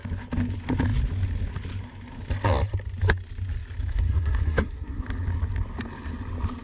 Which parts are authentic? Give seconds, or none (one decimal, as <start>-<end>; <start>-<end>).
0.0-3.9; 5.0-6.6